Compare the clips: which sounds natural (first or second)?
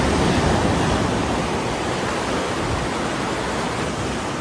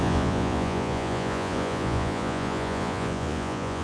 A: first